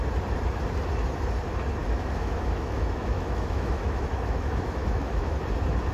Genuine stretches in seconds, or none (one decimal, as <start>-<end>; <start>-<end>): 0.0-1.8; 5.3-5.9